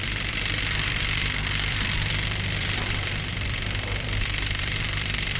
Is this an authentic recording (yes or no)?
no